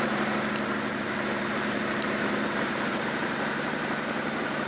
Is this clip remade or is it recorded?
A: remade